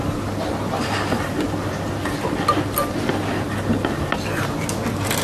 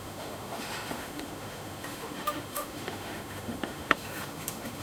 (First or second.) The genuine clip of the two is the first